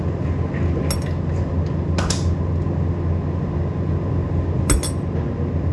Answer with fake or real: real